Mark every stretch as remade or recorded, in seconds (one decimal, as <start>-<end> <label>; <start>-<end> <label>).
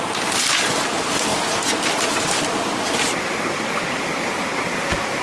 0.0-5.2 recorded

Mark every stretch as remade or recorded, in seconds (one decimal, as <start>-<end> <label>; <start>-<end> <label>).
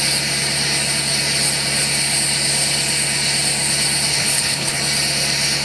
0.0-4.1 recorded; 4.1-4.8 remade; 4.8-5.6 recorded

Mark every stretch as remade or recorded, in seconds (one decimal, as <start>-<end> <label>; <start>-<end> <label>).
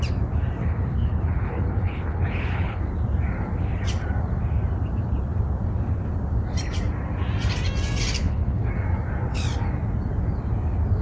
0.0-0.6 recorded; 0.6-2.8 remade; 2.8-8.2 recorded; 8.2-8.7 remade; 8.7-11.0 recorded